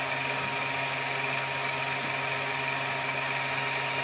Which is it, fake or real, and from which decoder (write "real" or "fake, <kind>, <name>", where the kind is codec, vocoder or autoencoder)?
real